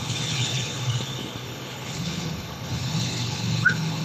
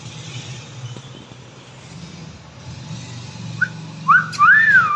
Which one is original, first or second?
second